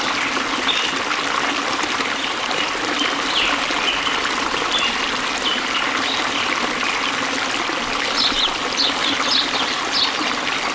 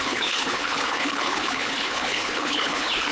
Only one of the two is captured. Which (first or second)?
first